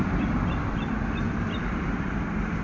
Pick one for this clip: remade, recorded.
recorded